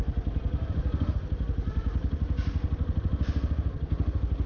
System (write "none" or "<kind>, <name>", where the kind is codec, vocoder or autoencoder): vocoder, BigVGAN v2